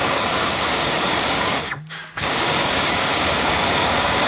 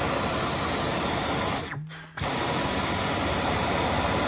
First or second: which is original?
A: second